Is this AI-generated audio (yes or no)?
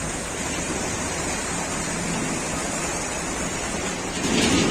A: no